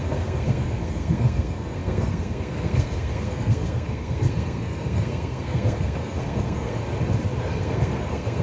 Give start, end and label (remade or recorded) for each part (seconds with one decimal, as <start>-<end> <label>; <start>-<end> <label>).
0.0-6.8 remade; 6.8-7.4 recorded; 7.4-8.4 remade

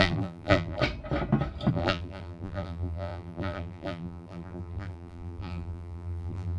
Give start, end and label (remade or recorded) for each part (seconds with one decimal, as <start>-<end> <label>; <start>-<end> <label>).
0.0-0.8 remade; 0.8-1.7 recorded; 1.7-6.6 remade

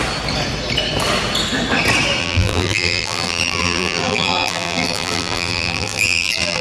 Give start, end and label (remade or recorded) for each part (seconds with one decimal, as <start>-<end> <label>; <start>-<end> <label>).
0.0-2.2 recorded; 2.2-6.6 remade

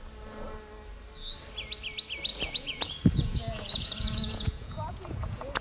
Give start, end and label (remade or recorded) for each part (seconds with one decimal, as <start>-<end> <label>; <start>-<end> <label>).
0.0-2.3 recorded; 2.3-5.6 remade

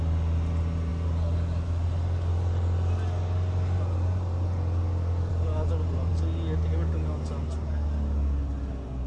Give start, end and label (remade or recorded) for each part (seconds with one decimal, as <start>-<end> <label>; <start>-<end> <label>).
0.0-9.1 recorded